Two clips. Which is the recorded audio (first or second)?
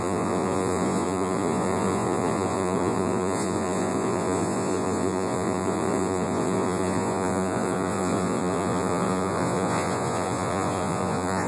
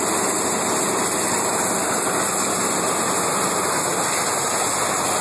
second